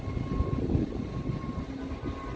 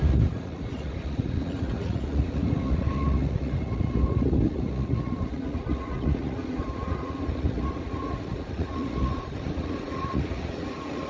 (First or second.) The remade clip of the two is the second